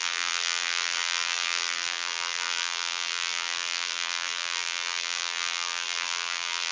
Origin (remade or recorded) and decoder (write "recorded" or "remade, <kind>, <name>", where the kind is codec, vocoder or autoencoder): remade, vocoder, BigVGAN v2